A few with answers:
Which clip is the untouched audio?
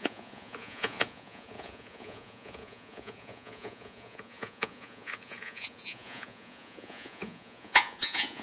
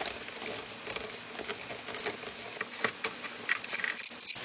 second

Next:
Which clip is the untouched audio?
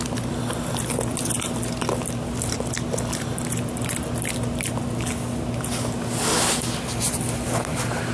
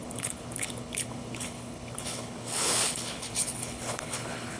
first